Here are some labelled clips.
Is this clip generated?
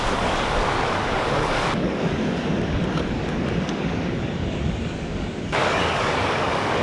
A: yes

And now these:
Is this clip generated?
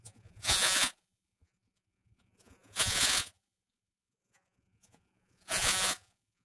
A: yes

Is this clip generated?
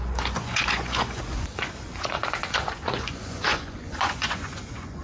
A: yes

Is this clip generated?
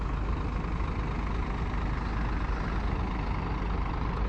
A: no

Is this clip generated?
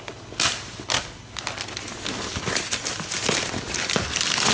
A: no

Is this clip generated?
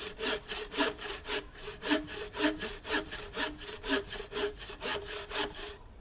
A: yes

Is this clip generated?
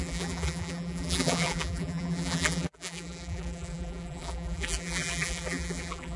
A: yes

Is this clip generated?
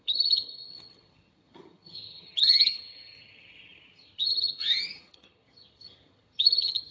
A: yes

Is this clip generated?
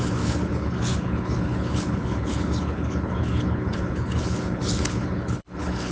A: yes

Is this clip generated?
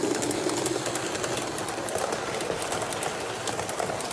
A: no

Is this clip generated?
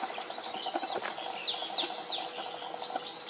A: no